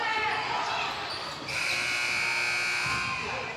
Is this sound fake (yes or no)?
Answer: no